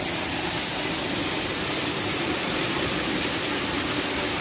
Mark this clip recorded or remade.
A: recorded